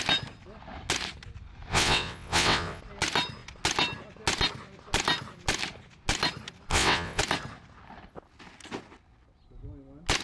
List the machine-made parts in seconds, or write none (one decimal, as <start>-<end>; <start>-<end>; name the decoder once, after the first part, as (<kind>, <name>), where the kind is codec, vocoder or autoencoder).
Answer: 1.7-2.8 (vocoder, WaveNeXt); 6.7-7.2